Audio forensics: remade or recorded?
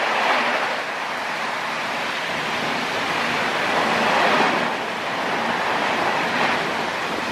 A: recorded